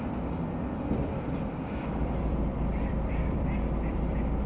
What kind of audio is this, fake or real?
fake